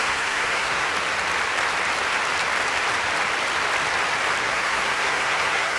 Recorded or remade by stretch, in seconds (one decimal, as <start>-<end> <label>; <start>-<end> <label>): 0.0-0.9 remade; 0.9-4.4 recorded; 4.4-5.8 remade